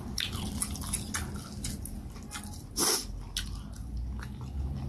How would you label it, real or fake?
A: real